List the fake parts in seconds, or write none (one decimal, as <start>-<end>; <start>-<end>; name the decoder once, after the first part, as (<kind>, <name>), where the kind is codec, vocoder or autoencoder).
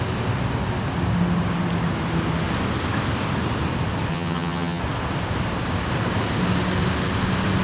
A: 4.1-4.8 (vocoder, HiFi-GAN)